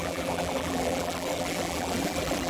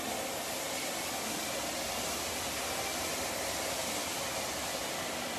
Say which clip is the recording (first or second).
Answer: second